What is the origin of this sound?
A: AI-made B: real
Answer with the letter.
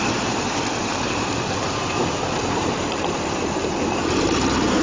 A